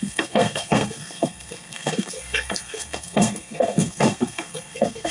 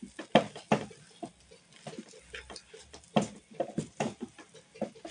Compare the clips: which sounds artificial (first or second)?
first